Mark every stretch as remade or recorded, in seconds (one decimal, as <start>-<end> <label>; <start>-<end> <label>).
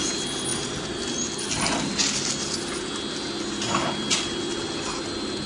0.0-5.5 recorded